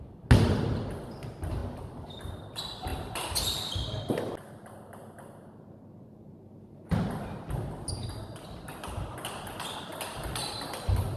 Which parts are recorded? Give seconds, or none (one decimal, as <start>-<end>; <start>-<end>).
0.0-11.2